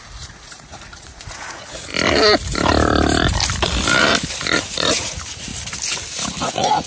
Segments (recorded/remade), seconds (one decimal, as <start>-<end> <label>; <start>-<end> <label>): 0.0-1.9 remade; 1.9-4.4 recorded; 4.4-5.5 remade; 5.5-6.5 recorded; 6.5-6.9 remade